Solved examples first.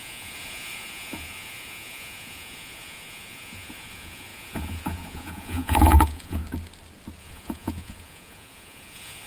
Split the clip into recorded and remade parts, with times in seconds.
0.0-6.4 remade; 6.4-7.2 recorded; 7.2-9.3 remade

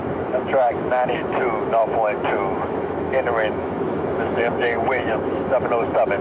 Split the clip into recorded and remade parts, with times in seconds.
0.0-6.2 remade

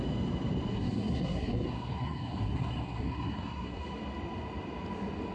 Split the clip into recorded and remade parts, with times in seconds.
0.0-0.7 recorded; 0.7-3.8 remade; 3.8-5.3 recorded